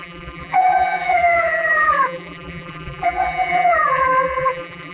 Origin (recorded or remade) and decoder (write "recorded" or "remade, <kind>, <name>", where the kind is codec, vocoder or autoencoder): remade, vocoder, BigVGAN v2